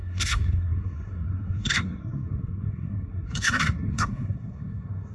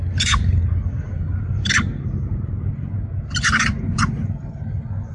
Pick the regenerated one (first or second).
first